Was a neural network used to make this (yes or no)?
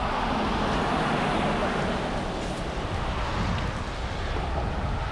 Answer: no